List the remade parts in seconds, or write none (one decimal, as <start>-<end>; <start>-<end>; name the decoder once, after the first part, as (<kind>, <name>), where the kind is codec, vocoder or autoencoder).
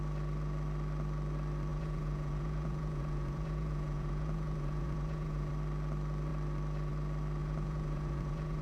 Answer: 1.7-5.5 (vocoder, Vocos); 7.4-8.6